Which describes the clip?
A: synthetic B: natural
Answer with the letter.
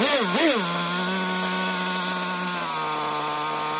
B